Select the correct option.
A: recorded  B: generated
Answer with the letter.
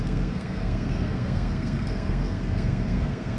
B